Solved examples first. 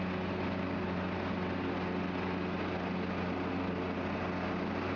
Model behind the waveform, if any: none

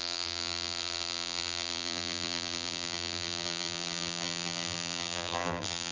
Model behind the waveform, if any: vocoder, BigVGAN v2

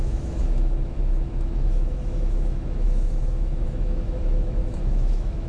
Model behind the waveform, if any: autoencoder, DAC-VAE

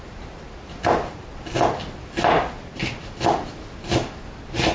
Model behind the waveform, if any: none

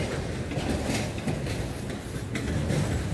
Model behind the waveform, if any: none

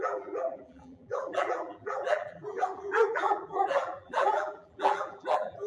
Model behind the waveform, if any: vocoder, BigVGAN v2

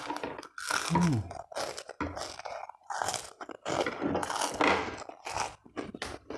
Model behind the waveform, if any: none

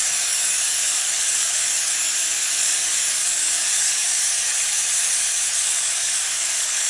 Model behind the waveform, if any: codec, DAC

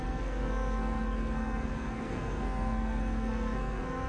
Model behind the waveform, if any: codec, SNAC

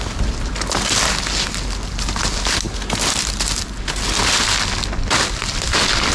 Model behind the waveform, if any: none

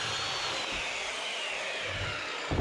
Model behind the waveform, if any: none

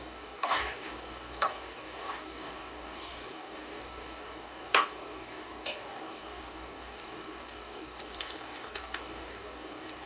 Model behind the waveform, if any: codec, DAC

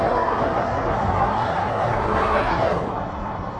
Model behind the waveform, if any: codec, SNAC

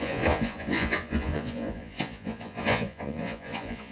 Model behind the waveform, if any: vocoder, Vocos